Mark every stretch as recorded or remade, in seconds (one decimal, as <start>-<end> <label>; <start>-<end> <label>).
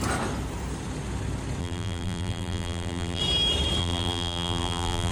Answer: 0.0-1.6 recorded; 1.6-3.2 remade; 3.2-3.8 recorded; 3.8-5.1 remade